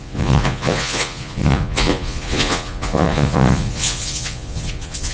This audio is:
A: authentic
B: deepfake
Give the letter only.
B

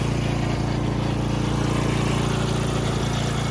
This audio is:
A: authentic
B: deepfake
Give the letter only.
A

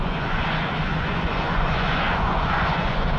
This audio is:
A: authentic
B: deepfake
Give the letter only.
B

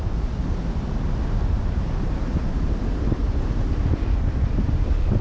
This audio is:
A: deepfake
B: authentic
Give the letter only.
B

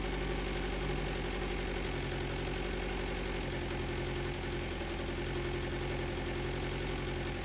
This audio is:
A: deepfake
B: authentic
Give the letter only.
B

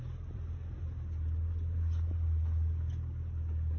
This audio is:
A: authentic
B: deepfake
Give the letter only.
A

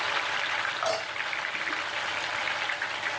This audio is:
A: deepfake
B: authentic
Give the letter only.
B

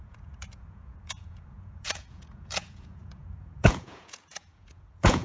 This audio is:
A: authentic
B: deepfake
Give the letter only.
B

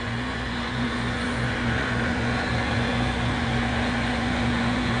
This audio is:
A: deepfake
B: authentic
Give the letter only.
A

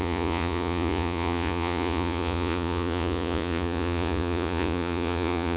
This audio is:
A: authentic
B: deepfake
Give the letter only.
B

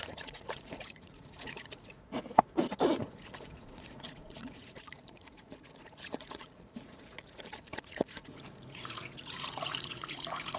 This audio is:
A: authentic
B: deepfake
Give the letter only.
B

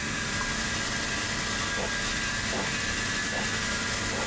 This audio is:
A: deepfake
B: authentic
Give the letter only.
B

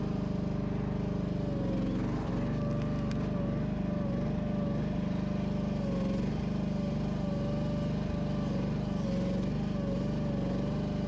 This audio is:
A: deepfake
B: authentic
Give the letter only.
B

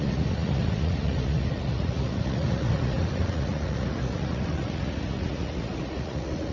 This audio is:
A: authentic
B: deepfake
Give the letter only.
B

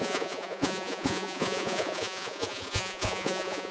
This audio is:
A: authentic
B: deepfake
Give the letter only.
B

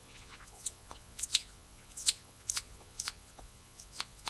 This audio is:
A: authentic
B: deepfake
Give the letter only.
B